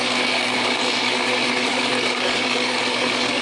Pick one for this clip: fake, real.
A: fake